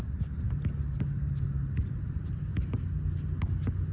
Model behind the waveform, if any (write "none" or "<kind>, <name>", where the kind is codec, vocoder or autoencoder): none